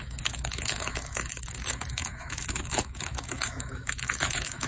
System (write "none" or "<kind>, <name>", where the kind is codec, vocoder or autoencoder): autoencoder, DAC-VAE